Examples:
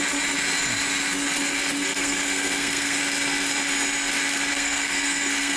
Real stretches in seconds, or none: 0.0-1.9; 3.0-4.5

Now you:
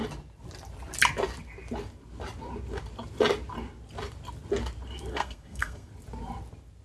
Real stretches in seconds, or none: 0.0-5.1; 5.9-6.8

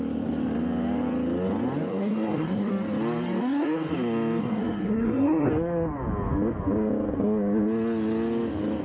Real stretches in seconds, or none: 0.0-1.9; 2.7-3.4; 3.9-4.4; 5.5-8.8